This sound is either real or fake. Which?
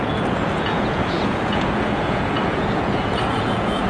fake